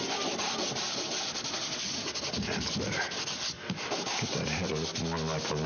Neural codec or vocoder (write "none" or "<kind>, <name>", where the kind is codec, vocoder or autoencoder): vocoder, BigVGAN v2